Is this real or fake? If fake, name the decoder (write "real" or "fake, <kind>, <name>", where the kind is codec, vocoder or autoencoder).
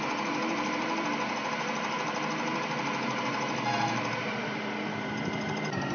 real